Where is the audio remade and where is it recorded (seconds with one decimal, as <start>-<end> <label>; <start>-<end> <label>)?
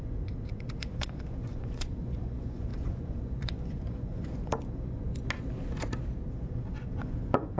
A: 0.0-5.1 remade; 5.1-6.3 recorded; 6.3-7.6 remade